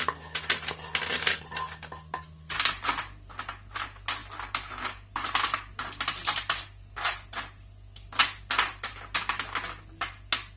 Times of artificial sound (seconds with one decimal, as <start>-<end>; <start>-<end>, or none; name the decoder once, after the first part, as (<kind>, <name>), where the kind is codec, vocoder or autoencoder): none